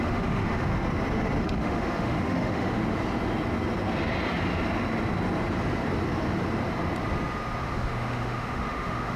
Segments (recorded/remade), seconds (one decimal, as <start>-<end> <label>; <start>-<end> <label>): 0.0-0.7 remade; 0.7-1.4 recorded; 1.4-2.8 remade; 2.8-7.6 recorded; 7.6-9.2 remade